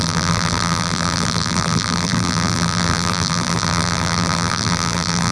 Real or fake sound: fake